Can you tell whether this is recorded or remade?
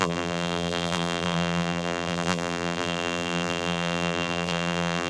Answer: remade